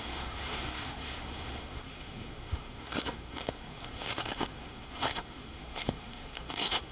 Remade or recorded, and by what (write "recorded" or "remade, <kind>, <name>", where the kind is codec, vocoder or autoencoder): remade, codec, SNAC